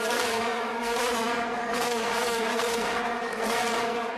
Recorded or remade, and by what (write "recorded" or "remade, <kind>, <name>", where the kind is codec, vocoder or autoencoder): remade, codec, SNAC